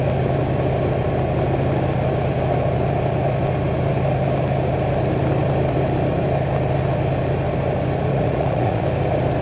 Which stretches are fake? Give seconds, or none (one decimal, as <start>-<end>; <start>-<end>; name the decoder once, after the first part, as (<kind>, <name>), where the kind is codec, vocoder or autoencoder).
8.1-8.8 (vocoder, Vocos)